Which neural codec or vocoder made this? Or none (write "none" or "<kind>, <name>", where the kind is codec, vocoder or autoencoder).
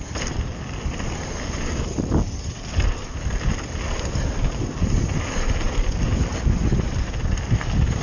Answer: none